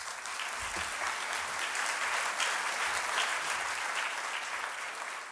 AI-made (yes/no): no